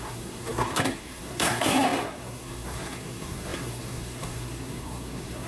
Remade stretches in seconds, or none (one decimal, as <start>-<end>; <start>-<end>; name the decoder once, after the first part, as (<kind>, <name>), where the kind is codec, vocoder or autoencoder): 0.0-5.5 (codec, SNAC)